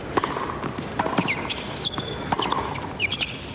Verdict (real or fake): real